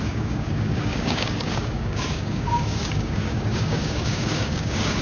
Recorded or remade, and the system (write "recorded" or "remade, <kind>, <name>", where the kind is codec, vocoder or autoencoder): remade, codec, DAC